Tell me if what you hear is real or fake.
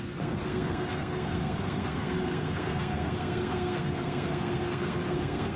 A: fake